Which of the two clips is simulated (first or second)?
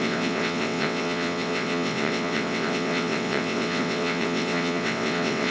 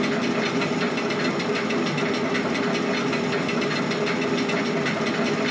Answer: first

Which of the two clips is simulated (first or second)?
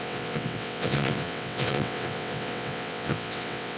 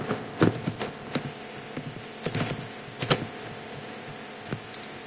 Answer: first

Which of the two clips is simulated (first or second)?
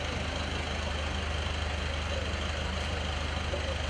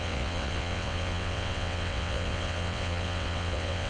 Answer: second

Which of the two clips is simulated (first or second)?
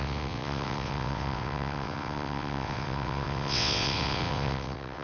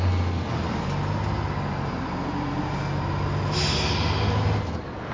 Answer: first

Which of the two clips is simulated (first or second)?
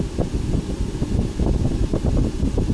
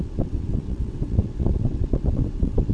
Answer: second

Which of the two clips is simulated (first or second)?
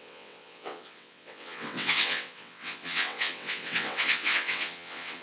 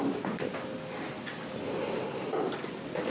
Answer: first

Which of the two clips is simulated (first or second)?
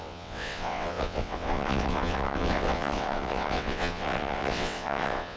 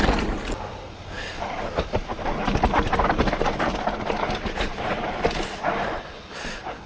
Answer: first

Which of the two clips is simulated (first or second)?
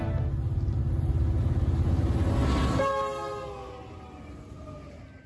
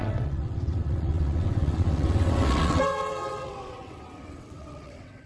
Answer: second